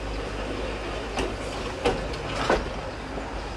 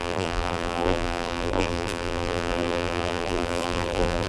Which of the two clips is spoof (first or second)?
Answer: second